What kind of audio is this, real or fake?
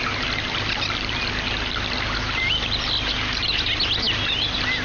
real